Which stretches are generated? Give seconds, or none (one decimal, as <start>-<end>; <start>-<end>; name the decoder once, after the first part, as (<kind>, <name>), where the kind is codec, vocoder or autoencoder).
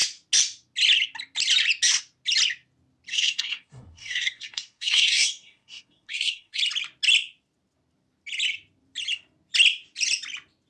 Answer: 3.1-6.6 (codec, SNAC)